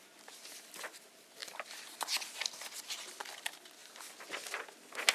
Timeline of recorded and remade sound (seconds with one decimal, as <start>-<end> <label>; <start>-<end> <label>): 0.0-5.1 recorded